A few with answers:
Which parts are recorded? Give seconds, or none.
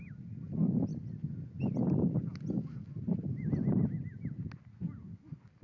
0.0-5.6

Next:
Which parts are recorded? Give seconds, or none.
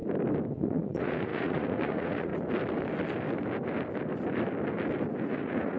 0.0-0.5; 2.3-5.2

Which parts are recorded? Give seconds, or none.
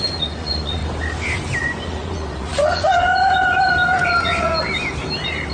0.8-1.6; 4.5-5.5